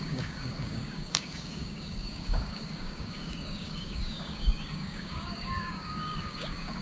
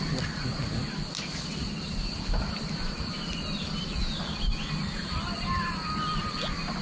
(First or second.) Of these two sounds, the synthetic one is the first